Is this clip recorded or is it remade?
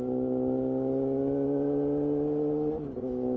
recorded